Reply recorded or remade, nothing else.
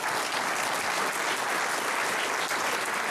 recorded